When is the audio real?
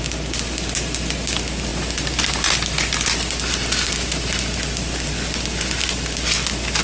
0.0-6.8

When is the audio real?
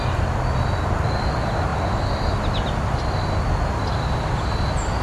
0.0-5.0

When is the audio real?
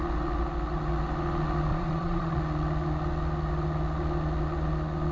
0.0-1.7; 2.4-5.1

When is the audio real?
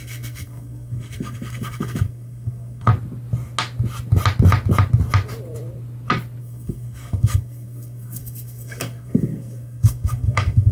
2.9-6.4